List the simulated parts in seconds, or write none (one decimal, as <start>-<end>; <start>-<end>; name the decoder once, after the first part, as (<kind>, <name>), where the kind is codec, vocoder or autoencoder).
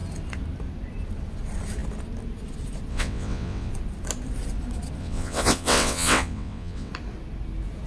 2.9-3.7 (vocoder, WaveNeXt); 5.0-6.9